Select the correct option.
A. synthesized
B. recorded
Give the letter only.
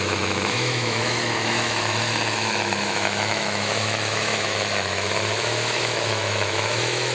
A